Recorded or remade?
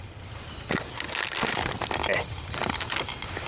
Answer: recorded